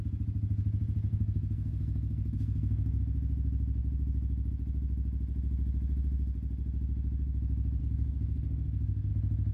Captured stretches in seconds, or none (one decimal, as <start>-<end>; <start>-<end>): 0.0-1.1; 3.0-7.8; 9.1-9.5